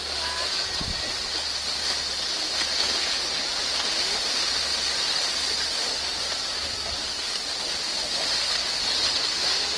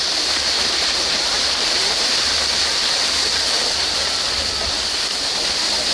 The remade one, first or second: second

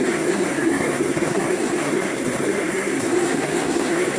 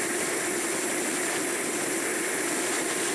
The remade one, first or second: first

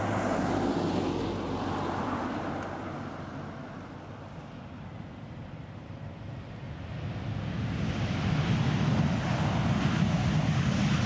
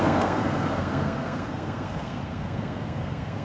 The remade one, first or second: second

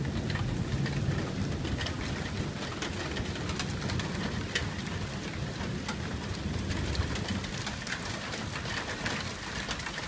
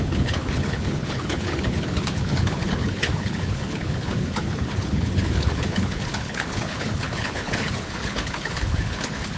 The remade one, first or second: second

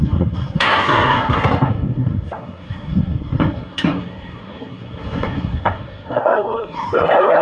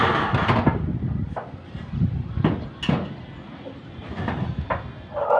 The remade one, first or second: first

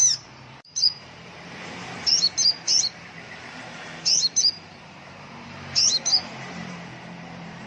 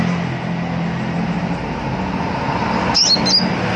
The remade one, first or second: first